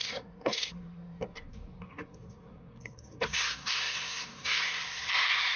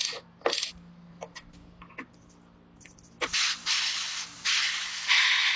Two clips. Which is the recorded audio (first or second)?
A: second